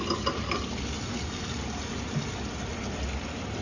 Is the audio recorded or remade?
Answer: recorded